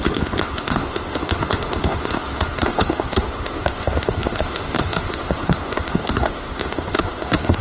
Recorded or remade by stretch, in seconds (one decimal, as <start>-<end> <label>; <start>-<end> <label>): 0.0-7.6 remade